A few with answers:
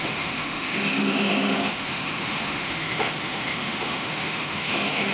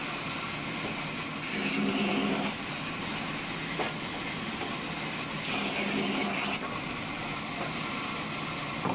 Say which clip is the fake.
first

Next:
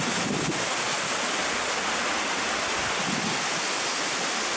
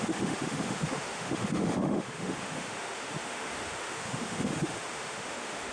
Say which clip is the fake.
second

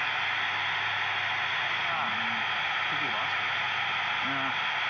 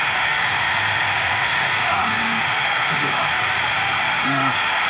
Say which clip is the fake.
second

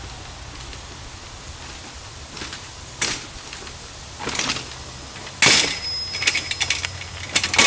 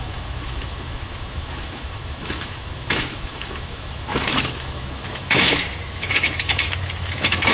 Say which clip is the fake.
second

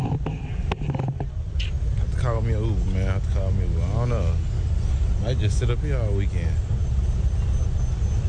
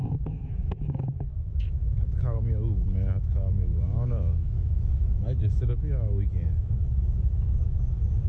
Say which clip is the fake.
second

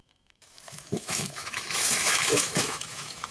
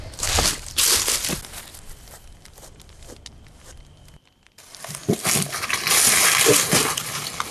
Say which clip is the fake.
first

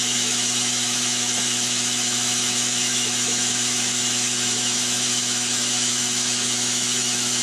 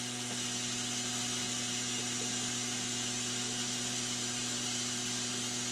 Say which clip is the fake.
first